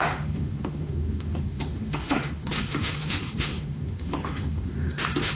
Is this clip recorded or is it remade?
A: remade